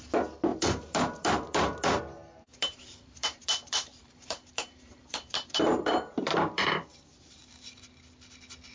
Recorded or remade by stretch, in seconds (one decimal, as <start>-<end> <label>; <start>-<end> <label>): 0.0-0.5 recorded; 0.5-2.0 remade; 2.0-2.5 recorded; 2.5-7.4 remade; 7.4-8.7 recorded